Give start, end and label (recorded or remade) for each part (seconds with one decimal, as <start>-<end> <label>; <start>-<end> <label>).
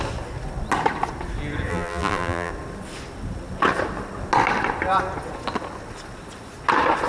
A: 0.0-1.7 recorded; 1.7-2.5 remade; 2.5-7.1 recorded